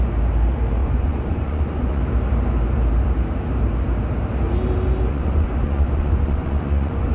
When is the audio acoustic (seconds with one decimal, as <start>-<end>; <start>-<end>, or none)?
0.0-0.8; 2.0-5.1